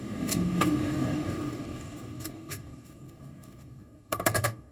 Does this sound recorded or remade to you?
remade